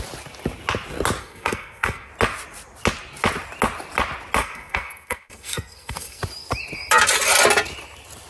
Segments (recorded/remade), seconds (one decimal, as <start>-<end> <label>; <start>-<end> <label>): 0.0-1.2 recorded; 1.2-2.1 remade; 2.1-4.4 recorded; 4.4-6.2 remade; 6.2-8.3 recorded